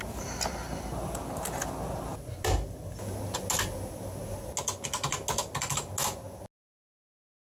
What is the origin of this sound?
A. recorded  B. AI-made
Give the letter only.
A